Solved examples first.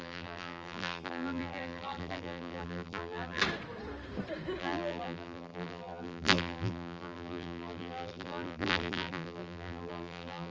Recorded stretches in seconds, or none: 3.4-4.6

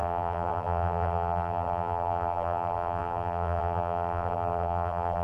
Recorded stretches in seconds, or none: none

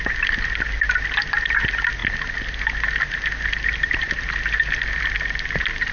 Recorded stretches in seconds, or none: 0.0-5.9

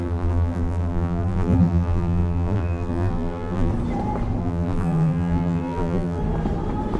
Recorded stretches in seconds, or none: 3.7-4.4; 6.2-7.0

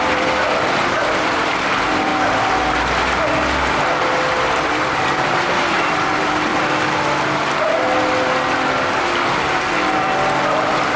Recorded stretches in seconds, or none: 2.1-4.4; 6.5-9.9

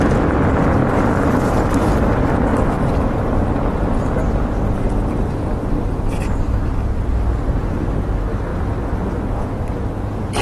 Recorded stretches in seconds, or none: 0.0-0.8; 1.9-2.5; 4.9-8.5; 9.7-10.4

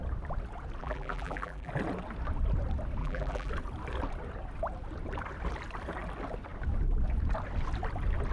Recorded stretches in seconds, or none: 0.0-0.8; 1.7-3.0; 3.5-8.3

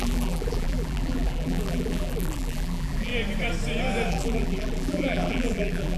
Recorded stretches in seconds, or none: 3.1-4.1